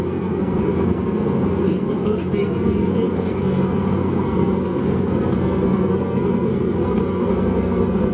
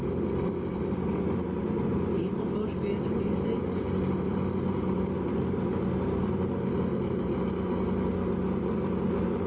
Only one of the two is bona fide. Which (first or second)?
second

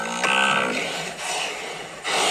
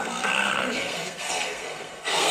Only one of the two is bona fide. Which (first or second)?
first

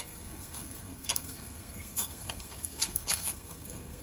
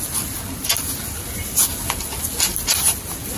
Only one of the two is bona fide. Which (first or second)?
second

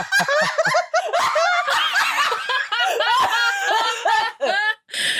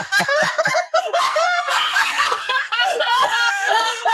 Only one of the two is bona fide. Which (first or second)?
first